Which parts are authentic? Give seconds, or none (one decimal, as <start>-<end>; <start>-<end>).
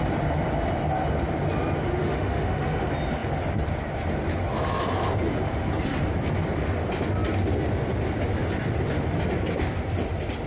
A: 0.0-2.0; 2.8-10.5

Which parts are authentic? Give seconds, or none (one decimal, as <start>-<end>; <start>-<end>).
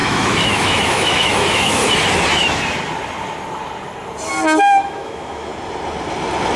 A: 1.8-4.6; 5.5-6.6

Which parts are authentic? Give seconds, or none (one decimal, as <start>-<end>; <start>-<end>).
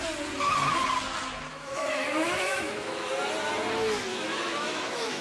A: 0.0-1.5; 3.1-4.1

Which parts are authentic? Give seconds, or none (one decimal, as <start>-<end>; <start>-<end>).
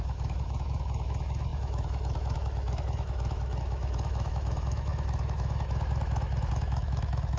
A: none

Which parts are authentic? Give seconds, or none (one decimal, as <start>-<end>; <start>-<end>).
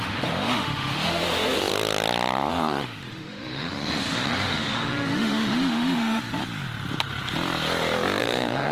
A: 1.7-2.5; 6.4-8.2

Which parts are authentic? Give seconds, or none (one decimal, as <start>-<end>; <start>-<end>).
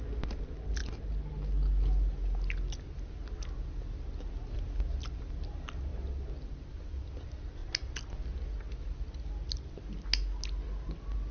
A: 0.0-11.3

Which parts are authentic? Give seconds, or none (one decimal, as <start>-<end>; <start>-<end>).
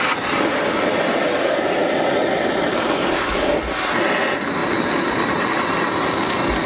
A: 0.0-6.7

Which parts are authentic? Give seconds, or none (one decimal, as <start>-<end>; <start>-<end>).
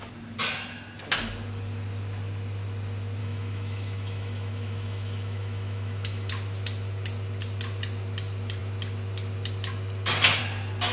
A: 0.0-3.2; 6.3-10.9